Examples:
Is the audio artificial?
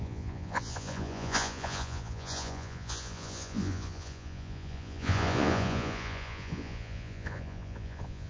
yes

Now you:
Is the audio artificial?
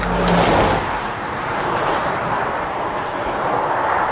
no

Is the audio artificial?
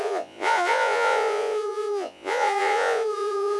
yes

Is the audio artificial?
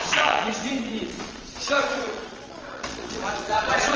yes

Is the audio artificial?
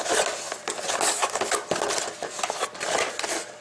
no